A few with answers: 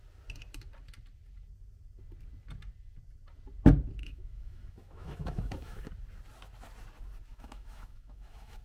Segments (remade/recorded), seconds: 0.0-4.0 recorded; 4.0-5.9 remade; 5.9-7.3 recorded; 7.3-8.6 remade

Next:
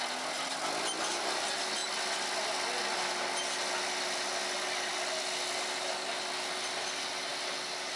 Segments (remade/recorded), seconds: 0.0-8.0 recorded

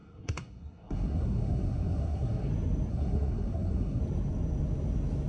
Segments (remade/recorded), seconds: 0.0-2.5 remade; 2.5-2.9 recorded; 2.9-4.0 remade; 4.0-5.3 recorded

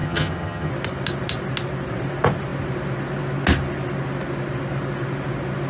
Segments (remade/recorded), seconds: 0.0-0.7 remade; 0.7-5.7 recorded

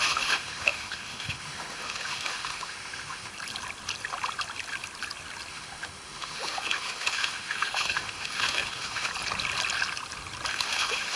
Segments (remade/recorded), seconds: 0.0-3.3 remade; 3.3-5.5 recorded; 5.5-9.1 remade; 9.1-10.5 recorded; 10.5-11.2 remade

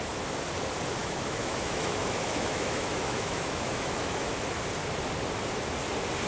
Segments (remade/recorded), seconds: 0.0-1.0 recorded; 1.0-4.3 remade; 4.3-6.3 recorded

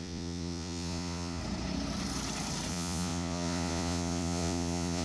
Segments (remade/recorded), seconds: 0.0-1.4 remade; 1.4-2.7 recorded; 2.7-5.0 remade